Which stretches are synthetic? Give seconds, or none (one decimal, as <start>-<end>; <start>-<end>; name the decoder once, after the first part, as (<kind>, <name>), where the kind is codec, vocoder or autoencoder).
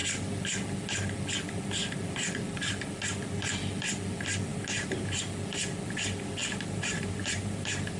4.5-5.2 (vocoder, BigVGAN v2); 6.4-8.0